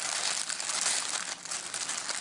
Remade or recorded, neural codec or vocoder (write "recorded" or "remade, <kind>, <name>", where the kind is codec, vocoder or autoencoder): recorded